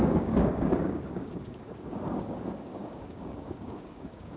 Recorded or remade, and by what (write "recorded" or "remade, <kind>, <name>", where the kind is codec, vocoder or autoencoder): remade, codec, DAC